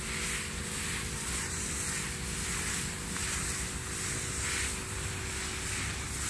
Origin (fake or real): real